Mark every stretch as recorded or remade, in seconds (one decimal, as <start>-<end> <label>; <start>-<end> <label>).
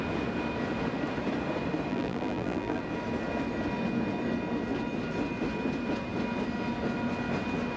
0.0-1.9 recorded; 1.9-2.8 remade; 2.8-7.8 recorded